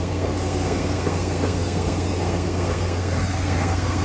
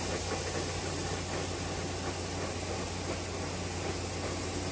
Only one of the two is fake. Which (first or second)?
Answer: first